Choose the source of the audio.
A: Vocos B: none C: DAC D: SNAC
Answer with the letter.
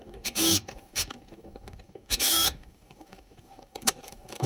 C